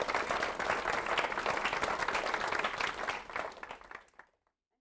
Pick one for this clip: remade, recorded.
recorded